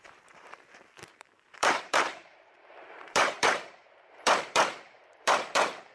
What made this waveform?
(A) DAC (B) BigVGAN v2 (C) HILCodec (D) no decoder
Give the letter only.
B